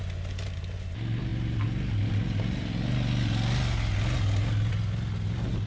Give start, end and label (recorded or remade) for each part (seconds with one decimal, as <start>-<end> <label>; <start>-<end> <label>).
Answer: 0.0-5.7 recorded